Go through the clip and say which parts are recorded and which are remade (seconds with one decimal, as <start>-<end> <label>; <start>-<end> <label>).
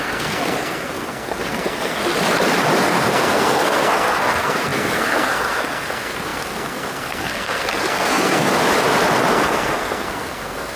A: 0.0-2.0 remade; 2.0-2.8 recorded; 2.8-8.5 remade; 8.5-9.3 recorded; 9.3-10.8 remade